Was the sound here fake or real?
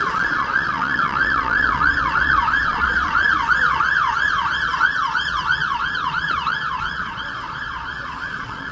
fake